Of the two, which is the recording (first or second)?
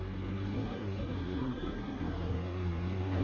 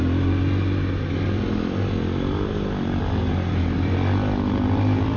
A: second